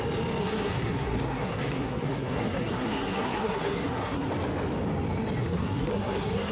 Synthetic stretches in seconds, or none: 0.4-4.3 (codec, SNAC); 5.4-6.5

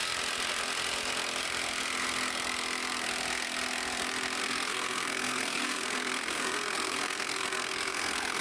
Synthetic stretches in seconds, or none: 4.4-8.4 (codec, SNAC)

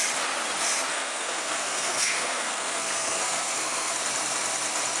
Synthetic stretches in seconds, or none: 0.9-3.9 (codec, SNAC)